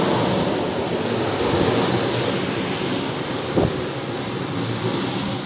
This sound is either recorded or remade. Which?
recorded